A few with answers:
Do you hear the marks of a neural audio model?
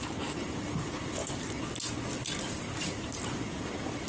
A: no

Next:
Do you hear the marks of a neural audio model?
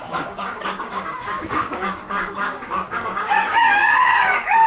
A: yes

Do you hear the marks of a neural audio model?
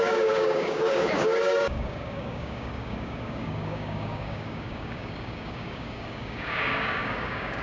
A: yes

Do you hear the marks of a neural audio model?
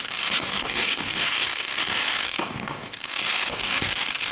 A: yes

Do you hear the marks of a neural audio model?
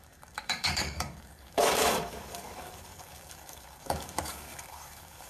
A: yes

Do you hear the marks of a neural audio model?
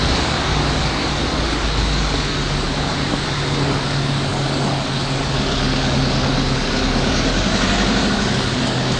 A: yes